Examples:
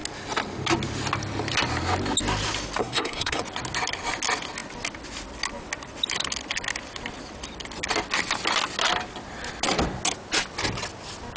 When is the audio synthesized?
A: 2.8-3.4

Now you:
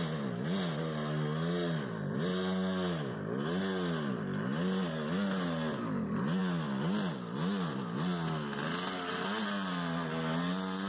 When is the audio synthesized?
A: none